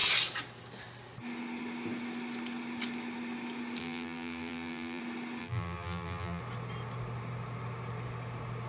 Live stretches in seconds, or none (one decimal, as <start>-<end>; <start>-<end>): 0.0-3.8; 5.0-5.4; 6.4-8.7